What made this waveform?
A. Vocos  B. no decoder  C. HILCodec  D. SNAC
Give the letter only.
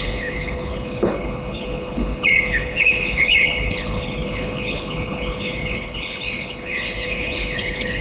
C